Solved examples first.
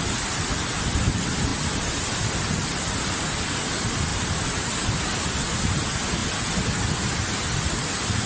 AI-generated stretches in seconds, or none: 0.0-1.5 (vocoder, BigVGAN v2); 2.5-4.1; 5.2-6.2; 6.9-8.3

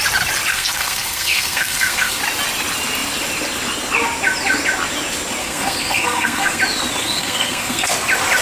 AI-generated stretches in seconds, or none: 0.5-2.2 (codec, SNAC); 5.4-6.6; 7.0-7.9

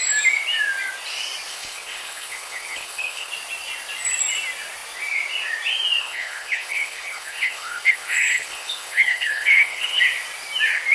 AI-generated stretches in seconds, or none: 1.5-3.3 (codec, HILCodec); 6.0-10.0

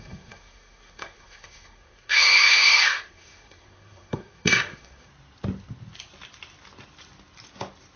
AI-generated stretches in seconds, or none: 0.0-5.1 (codec, SNAC)

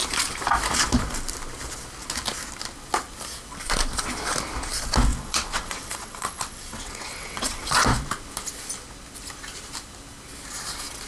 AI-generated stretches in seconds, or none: 5.1-7.7 (vocoder, WaveNeXt)

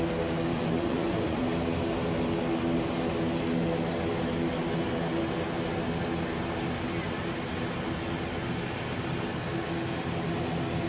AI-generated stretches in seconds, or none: 0.5-1.4 (vocoder, Vocos)